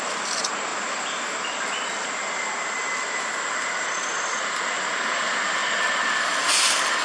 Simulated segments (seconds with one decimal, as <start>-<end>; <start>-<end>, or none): none